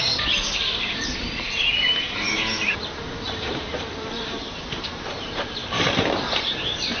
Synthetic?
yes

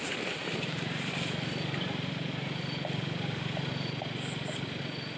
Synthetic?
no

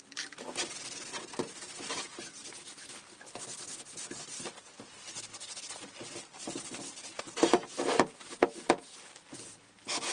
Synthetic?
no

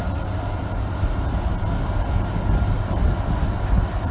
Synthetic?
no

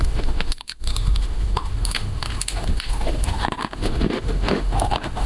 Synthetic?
yes